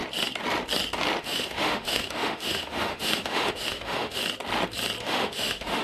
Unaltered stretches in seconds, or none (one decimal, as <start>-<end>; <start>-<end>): 0.0-1.2; 4.2-5.0